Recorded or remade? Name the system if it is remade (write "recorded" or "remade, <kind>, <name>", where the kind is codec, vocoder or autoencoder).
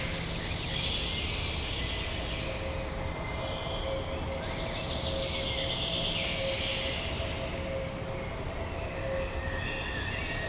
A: recorded